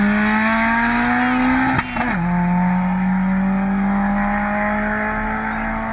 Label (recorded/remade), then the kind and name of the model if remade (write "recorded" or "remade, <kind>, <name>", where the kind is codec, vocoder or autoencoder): recorded